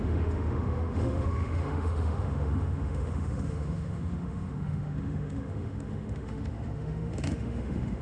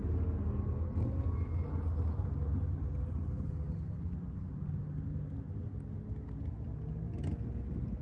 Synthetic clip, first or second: first